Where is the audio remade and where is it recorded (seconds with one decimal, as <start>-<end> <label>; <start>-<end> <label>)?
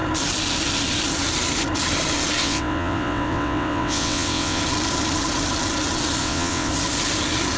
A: 0.0-2.4 recorded; 2.4-4.6 remade; 4.6-6.2 recorded; 6.2-6.7 remade; 6.7-7.6 recorded